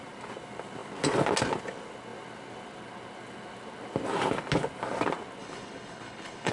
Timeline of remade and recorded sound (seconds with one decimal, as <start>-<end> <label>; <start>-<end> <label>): 0.0-5.4 recorded; 5.4-6.5 remade